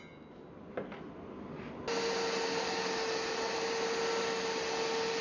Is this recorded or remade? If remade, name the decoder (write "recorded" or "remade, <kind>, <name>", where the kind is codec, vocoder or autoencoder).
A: recorded